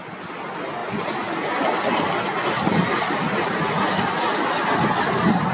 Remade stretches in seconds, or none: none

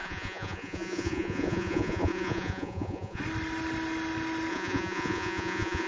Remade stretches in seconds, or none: 0.0-3.2 (vocoder, Vocos); 4.5-5.9

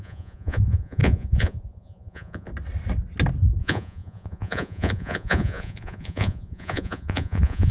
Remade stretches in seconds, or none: 0.0-2.5 (vocoder, Vocos); 3.6-7.7

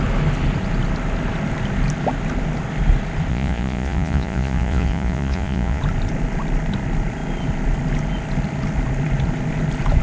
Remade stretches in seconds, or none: 3.3-5.8 (vocoder, Vocos)